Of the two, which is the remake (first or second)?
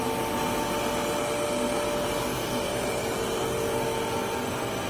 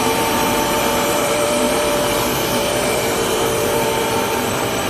second